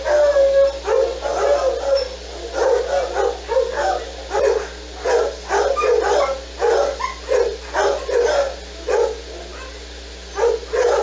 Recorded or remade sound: recorded